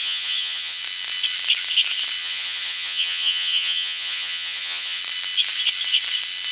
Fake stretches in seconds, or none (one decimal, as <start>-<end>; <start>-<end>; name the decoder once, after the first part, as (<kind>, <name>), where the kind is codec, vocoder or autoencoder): 0.0-0.8 (vocoder, HiFi-GAN); 2.2-5.0